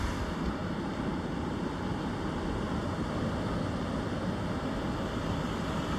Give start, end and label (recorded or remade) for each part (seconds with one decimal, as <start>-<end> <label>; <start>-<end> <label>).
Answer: 0.0-6.0 recorded